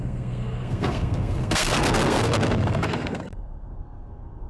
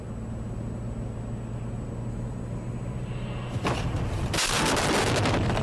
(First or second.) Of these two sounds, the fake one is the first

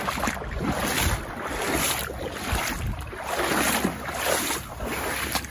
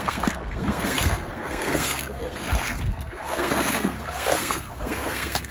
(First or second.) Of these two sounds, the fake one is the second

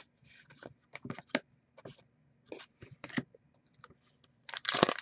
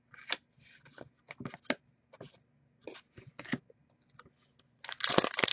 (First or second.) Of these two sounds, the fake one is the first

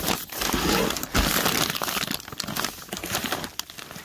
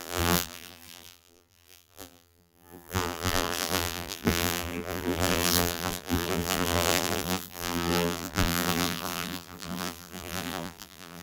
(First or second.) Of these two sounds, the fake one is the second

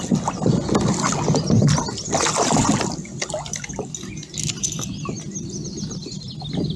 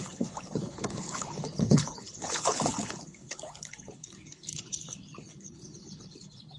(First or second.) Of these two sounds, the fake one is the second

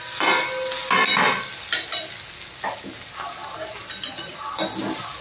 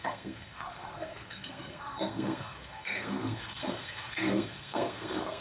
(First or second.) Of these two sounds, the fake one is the second